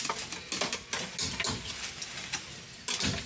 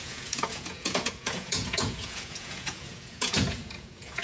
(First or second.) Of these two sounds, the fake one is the second